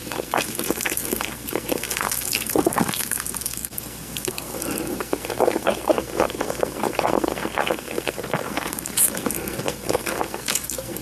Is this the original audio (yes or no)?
no